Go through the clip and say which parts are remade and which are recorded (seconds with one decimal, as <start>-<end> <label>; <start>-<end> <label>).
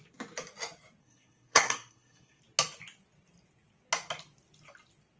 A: 0.0-1.0 recorded; 1.0-2.4 remade; 2.4-5.2 recorded